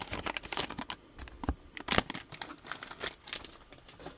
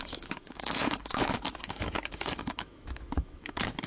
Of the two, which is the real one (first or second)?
first